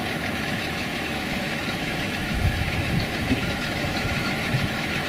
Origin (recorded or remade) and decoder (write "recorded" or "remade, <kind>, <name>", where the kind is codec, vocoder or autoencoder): remade, autoencoder, DAC-VAE